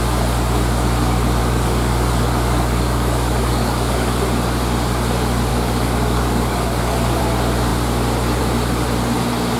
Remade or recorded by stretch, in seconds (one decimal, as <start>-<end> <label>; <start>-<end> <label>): 0.0-1.4 recorded; 1.4-4.2 remade; 4.2-5.5 recorded; 5.5-7.2 remade; 7.2-9.6 recorded